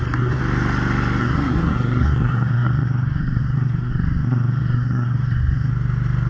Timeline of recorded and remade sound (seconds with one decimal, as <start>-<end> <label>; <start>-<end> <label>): 0.0-0.4 remade; 0.4-1.2 recorded; 1.2-5.7 remade; 5.7-6.3 recorded